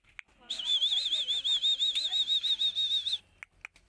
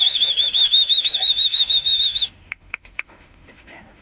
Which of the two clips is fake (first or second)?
second